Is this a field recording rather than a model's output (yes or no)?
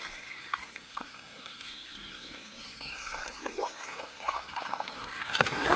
no